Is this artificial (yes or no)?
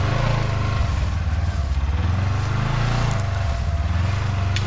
no